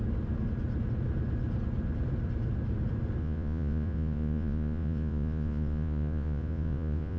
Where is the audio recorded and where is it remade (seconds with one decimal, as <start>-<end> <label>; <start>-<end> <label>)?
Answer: 0.0-3.2 recorded; 3.2-7.2 remade